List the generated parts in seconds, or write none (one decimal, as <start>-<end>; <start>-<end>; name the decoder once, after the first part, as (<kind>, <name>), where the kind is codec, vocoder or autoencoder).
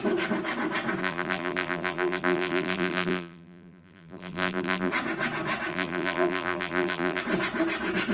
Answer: 1.0-4.9 (vocoder, BigVGAN v2); 5.7-7.2